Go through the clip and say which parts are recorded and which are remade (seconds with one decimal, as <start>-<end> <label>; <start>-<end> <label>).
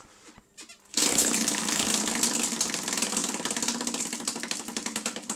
0.0-0.9 recorded; 0.9-2.0 remade; 2.0-5.4 recorded